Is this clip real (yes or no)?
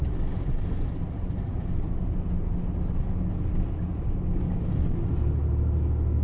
yes